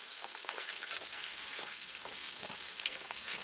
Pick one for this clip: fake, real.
fake